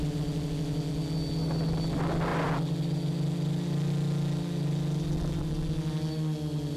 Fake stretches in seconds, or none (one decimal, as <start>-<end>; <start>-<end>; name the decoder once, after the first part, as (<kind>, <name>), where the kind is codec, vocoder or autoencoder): none